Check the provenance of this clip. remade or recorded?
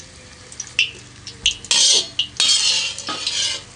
recorded